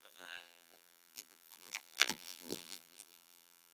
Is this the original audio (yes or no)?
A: no